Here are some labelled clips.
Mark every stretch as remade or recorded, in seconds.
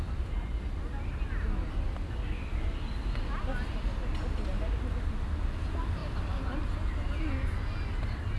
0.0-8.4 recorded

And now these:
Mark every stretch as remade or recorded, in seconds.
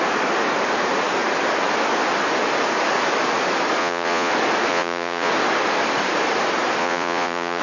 0.0-3.8 recorded; 3.8-4.3 remade; 4.3-4.7 recorded; 4.7-5.3 remade; 5.3-6.8 recorded; 6.8-7.6 remade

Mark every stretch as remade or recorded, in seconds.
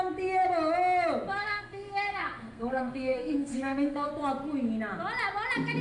0.0-1.3 recorded; 1.3-4.1 remade; 4.1-5.8 recorded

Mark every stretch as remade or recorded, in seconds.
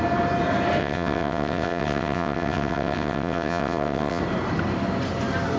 0.0-0.8 recorded; 0.8-4.2 remade; 4.2-5.6 recorded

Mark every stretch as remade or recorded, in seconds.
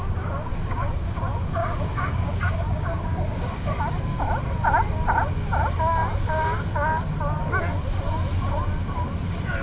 0.0-0.5 recorded; 0.5-1.2 remade; 1.2-1.6 recorded; 1.6-3.7 remade; 3.7-9.6 recorded